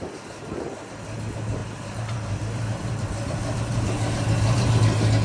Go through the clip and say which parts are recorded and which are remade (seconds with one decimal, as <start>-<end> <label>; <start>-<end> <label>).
0.0-1.6 recorded; 1.6-4.7 remade; 4.7-5.2 recorded